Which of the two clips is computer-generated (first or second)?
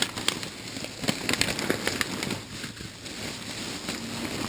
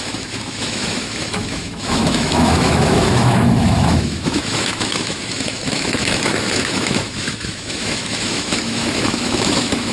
second